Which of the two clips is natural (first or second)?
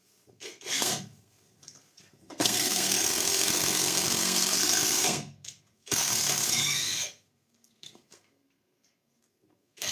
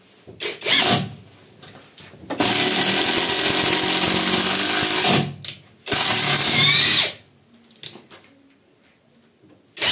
second